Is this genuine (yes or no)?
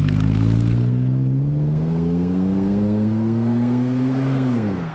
no